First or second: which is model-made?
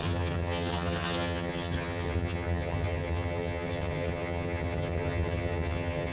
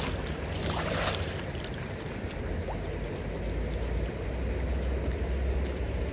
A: first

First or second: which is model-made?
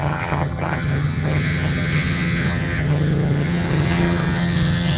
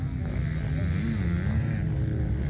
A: first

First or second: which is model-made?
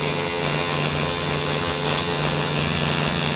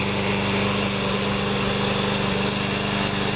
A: first